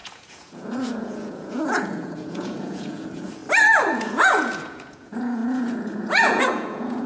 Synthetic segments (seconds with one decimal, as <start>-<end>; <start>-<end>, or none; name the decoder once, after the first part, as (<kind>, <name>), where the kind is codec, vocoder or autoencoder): 0.0-3.4 (vocoder, Vocos); 3.9-7.1